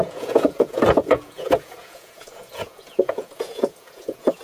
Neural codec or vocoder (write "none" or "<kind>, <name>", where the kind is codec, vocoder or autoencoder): vocoder, Vocos